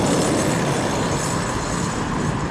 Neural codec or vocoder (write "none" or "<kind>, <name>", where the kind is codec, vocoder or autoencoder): none